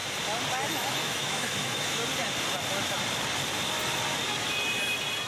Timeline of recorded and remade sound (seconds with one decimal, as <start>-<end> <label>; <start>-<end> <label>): 0.0-0.7 recorded; 0.7-2.0 remade; 2.0-5.3 recorded